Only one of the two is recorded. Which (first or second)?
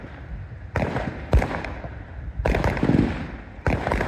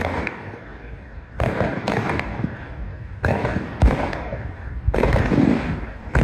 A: first